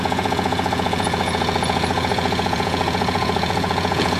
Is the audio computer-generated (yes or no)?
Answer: yes